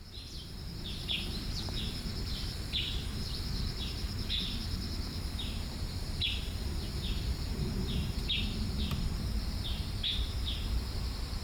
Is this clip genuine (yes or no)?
no